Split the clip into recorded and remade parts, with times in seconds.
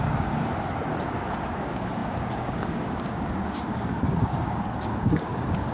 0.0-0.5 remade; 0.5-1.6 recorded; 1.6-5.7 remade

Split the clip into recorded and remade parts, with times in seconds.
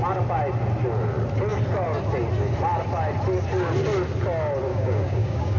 0.0-4.7 recorded; 4.7-5.6 remade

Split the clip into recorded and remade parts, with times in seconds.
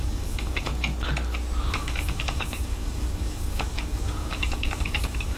0.0-0.7 remade; 0.7-1.7 recorded; 1.7-5.4 remade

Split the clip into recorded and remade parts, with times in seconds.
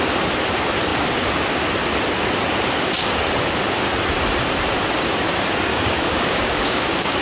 0.0-5.7 recorded; 5.7-7.2 remade